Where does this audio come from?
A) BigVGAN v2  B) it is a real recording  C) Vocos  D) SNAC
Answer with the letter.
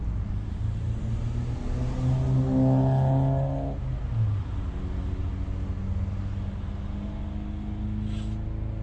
B